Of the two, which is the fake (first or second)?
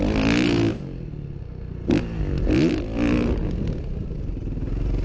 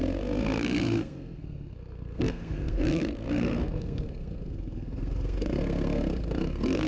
second